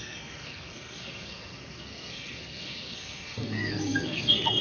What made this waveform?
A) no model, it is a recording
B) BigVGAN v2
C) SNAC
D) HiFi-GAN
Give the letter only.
C